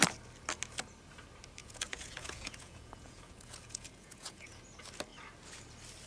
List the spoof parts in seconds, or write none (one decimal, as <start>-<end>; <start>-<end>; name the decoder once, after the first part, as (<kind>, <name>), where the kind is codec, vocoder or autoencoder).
1.6-4.6 (vocoder, Vocos)

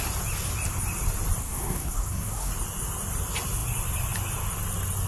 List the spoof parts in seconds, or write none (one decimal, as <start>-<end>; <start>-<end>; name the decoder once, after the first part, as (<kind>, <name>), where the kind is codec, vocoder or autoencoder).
1.4-2.5 (codec, SNAC)